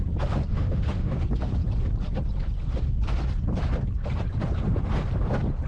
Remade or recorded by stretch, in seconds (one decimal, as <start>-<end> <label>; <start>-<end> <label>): 0.0-0.5 recorded; 0.5-1.1 remade; 1.1-5.7 recorded